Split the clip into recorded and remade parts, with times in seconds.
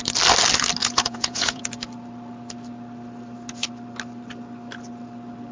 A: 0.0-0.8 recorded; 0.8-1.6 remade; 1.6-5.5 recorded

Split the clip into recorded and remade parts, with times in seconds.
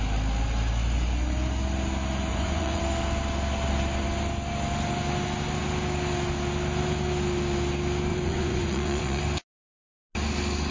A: 0.0-2.3 recorded; 2.3-2.8 remade; 2.8-8.1 recorded; 8.1-9.2 remade; 9.2-10.7 recorded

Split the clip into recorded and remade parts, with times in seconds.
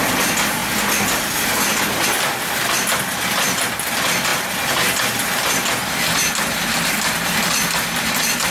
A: 0.0-8.5 recorded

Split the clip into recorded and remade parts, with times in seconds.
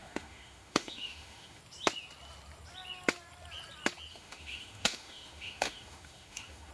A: 0.0-1.6 remade; 1.6-4.1 recorded; 4.1-6.7 remade